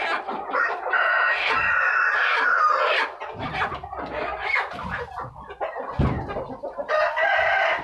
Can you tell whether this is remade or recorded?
recorded